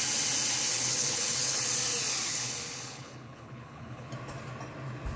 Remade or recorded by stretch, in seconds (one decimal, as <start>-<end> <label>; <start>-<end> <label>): 0.0-0.7 recorded; 0.7-1.6 remade; 1.6-2.3 recorded; 2.3-4.1 remade; 4.1-5.2 recorded